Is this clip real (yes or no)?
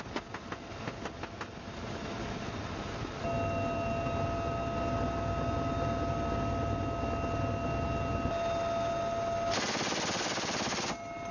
yes